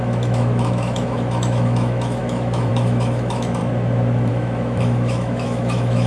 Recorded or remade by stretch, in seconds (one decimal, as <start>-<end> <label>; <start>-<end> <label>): 0.0-3.6 remade; 3.6-4.3 recorded; 4.3-6.1 remade

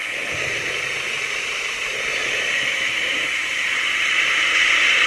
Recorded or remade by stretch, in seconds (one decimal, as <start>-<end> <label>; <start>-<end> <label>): 0.0-0.9 remade; 0.9-5.1 recorded

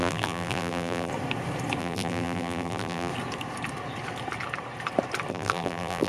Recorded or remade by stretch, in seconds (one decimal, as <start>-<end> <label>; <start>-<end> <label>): 0.0-1.1 remade; 1.1-1.8 recorded; 1.8-3.1 remade; 3.1-5.3 recorded; 5.3-6.1 remade

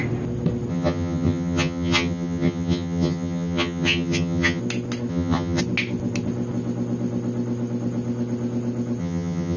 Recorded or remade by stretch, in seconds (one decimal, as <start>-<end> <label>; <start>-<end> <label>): 0.0-0.7 recorded; 0.7-4.6 remade; 4.6-5.1 recorded; 5.1-5.6 remade; 5.6-9.0 recorded; 9.0-9.6 remade

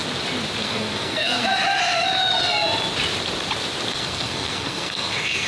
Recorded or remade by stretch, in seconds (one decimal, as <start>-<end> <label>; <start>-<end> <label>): 0.0-0.6 recorded; 0.6-1.5 remade; 1.5-3.9 recorded; 3.9-5.5 remade

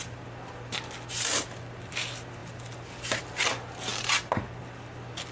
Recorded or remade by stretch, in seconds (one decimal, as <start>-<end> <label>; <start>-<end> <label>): 0.0-5.3 recorded